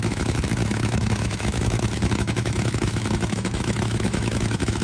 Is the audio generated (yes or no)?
yes